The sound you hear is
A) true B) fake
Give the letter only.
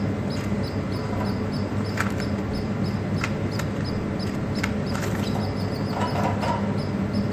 A